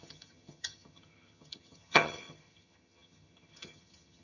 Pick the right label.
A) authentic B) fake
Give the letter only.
B